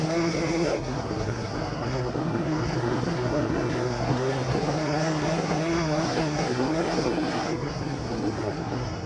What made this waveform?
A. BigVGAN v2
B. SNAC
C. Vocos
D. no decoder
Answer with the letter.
B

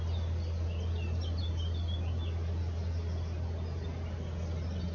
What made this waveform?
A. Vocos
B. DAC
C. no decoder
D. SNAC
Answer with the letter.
C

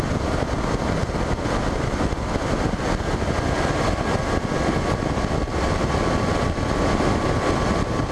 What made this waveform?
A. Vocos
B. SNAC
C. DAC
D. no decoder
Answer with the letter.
D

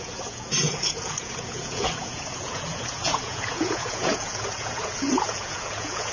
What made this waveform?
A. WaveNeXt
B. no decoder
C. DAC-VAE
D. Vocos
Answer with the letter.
D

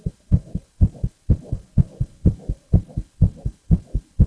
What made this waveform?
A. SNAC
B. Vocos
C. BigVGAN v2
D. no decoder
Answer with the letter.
D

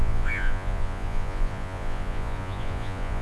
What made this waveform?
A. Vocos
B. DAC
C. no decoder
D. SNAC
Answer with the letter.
A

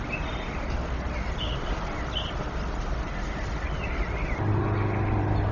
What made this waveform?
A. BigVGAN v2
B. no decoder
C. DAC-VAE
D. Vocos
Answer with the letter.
B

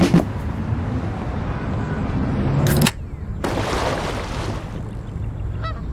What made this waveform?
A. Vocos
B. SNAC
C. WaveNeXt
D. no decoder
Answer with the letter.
D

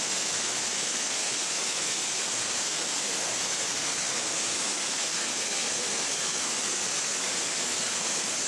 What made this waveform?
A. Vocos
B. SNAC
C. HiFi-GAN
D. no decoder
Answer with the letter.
B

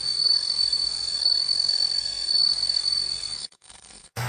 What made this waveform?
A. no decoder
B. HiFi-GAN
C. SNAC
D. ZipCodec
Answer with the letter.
C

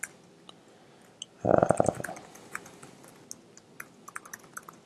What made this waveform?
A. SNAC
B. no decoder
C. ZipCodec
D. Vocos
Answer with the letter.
B